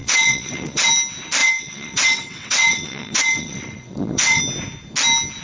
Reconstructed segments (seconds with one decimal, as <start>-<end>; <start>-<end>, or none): 0.0-0.9; 1.4-4.4